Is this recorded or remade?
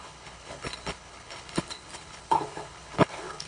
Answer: remade